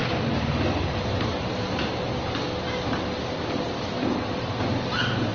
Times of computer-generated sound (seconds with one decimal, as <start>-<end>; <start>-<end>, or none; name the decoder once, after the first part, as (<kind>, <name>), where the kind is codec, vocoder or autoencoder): none